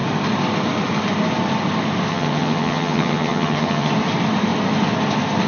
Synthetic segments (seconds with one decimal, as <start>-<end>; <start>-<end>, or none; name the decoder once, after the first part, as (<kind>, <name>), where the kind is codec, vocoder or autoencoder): 2.1-3.9 (vocoder, HiFi-GAN)